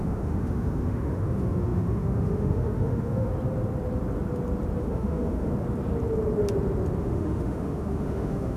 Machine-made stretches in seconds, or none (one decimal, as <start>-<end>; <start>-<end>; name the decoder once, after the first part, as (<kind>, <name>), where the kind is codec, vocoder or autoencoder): 0.0-3.3 (autoencoder, DAC-VAE); 4.8-5.5; 7.0-8.6